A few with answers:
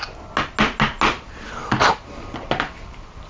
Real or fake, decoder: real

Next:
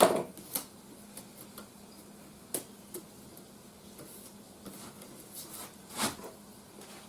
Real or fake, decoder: real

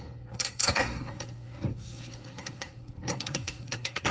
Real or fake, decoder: fake, codec, SNAC